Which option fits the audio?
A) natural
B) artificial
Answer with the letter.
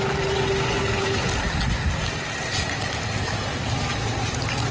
A